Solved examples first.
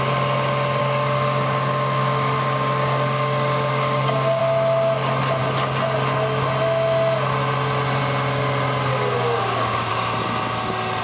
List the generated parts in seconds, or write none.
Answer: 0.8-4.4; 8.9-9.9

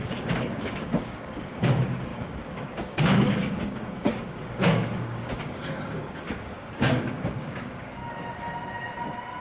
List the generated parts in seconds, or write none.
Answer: 0.0-8.0